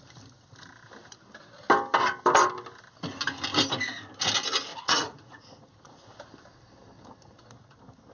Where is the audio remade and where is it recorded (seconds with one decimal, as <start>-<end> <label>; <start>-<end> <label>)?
0.0-4.7 recorded; 4.7-6.1 remade; 6.1-8.1 recorded